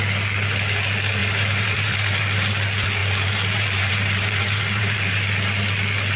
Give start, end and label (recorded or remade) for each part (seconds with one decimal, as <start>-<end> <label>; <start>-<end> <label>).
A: 0.0-1.2 recorded; 1.2-2.2 remade; 2.2-3.0 recorded; 3.0-5.3 remade; 5.3-6.2 recorded